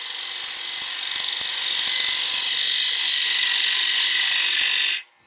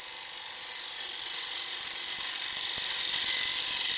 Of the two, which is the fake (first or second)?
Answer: second